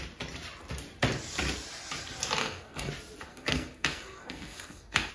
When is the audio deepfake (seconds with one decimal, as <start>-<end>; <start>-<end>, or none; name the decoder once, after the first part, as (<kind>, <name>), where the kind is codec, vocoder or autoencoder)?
2.4-2.9 (codec, SNAC); 3.3-5.1